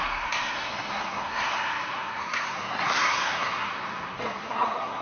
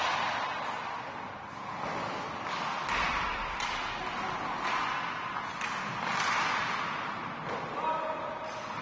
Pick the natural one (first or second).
second